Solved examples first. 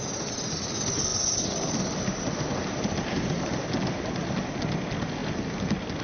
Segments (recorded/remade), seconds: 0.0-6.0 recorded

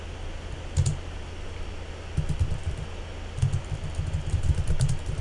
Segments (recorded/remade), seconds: 0.0-5.2 recorded

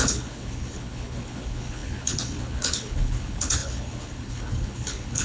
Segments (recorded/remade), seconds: 0.0-5.2 remade

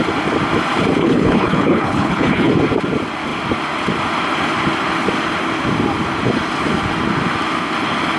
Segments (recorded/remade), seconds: 0.0-1.0 recorded; 1.0-2.5 remade; 2.5-8.2 recorded